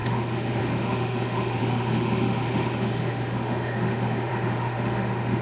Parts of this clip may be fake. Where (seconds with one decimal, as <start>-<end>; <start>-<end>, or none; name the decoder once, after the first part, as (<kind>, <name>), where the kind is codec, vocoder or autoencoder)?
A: 0.0-5.4 (autoencoder, DAC-VAE)